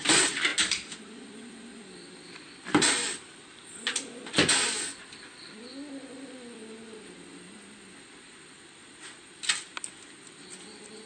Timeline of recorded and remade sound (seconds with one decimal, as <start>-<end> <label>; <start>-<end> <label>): 0.0-11.1 recorded